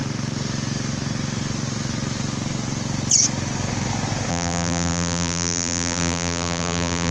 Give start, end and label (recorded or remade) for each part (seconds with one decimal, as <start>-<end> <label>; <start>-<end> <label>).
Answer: 0.0-4.3 recorded; 4.3-7.1 remade

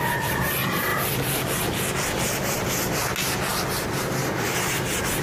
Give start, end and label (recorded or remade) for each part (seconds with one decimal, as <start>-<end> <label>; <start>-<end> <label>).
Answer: 0.0-5.2 recorded

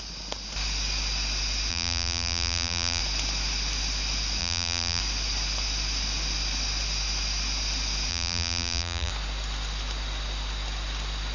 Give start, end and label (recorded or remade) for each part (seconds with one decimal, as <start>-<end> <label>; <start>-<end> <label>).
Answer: 0.0-1.7 recorded; 1.7-3.0 remade; 3.0-4.4 recorded; 4.4-5.0 remade; 5.0-8.1 recorded; 8.1-9.1 remade; 9.1-11.3 recorded

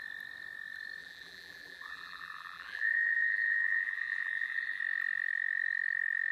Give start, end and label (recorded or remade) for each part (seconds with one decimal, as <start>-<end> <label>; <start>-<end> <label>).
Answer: 0.0-1.0 recorded; 1.0-4.8 remade; 4.8-6.3 recorded

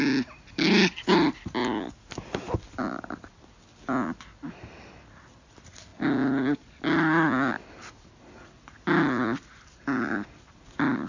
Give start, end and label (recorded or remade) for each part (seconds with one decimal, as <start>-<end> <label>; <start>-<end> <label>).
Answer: 0.0-11.1 recorded

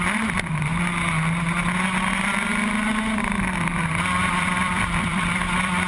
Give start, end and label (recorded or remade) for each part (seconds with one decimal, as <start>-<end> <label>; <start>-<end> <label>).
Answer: 0.0-0.7 remade; 0.7-3.2 recorded; 3.2-5.9 remade

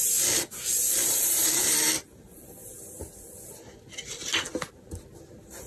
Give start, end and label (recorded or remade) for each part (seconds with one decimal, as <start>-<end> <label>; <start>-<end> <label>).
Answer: 0.0-3.1 remade; 3.1-4.7 recorded; 4.7-5.7 remade

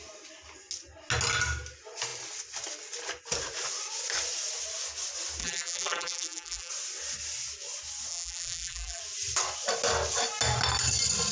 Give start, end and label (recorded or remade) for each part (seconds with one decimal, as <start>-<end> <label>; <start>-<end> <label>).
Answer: 0.0-5.4 recorded; 5.4-6.7 remade; 6.7-8.1 recorded; 8.1-9.0 remade; 9.0-11.3 recorded